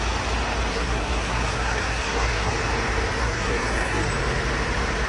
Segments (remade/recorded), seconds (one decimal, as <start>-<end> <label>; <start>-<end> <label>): 0.0-0.7 recorded; 0.7-2.5 remade; 2.5-3.2 recorded; 3.2-4.1 remade; 4.1-5.1 recorded